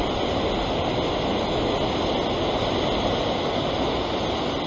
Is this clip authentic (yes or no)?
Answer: yes